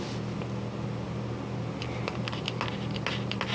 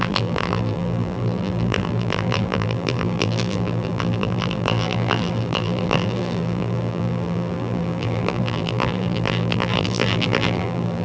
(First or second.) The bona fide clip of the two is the first